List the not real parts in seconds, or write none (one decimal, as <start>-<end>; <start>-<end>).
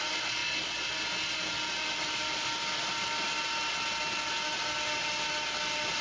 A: none